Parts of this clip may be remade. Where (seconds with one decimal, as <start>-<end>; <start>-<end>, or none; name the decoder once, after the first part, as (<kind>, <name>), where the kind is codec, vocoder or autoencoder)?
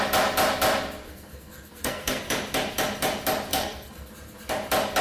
1.0-2.2 (codec, SNAC); 3.5-4.1